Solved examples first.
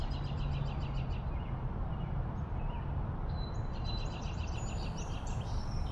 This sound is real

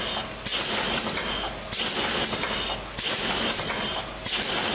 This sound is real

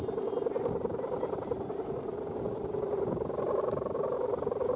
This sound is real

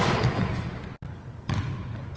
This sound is real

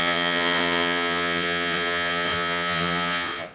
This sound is fake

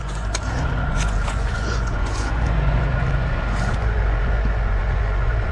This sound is fake